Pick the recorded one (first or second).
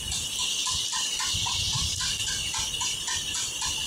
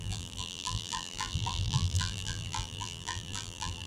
first